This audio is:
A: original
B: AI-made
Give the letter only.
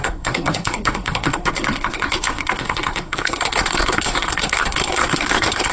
B